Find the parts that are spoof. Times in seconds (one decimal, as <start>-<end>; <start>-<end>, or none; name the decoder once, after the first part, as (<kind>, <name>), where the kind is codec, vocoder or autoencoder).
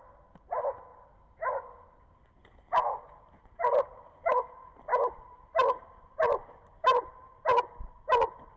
2.4-4.3 (vocoder, BigVGAN v2); 4.9-7.4